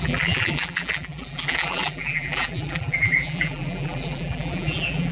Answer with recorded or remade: remade